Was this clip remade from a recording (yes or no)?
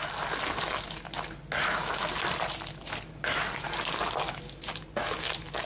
no